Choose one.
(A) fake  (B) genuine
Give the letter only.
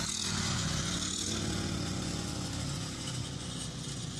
A